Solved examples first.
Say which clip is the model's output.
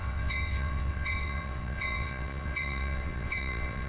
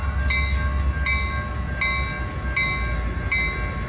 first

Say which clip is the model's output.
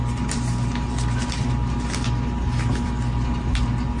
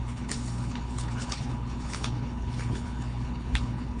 second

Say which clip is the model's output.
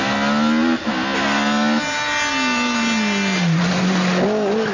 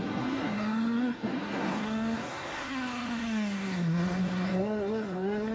second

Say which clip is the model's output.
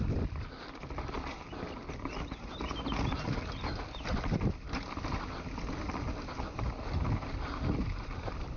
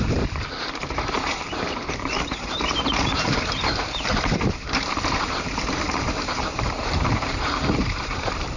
second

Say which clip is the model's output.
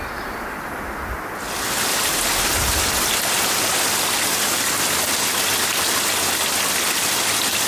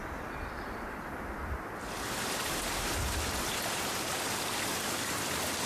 second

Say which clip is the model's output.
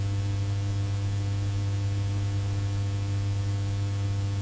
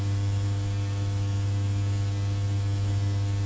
second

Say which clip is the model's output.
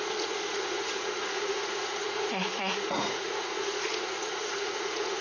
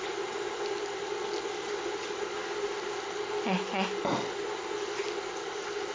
first